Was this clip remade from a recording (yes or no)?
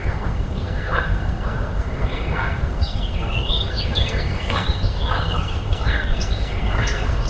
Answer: yes